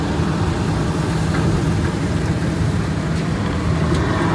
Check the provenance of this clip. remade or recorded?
recorded